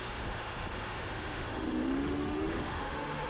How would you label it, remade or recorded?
remade